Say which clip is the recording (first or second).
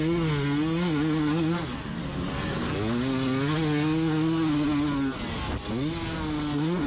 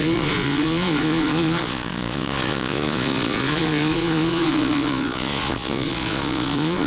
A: first